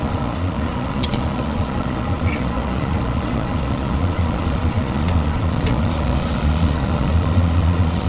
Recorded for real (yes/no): no